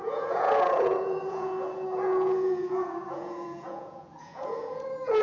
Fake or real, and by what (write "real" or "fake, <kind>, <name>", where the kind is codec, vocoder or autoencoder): fake, vocoder, Vocos